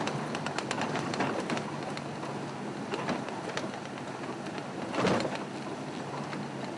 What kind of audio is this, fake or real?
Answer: real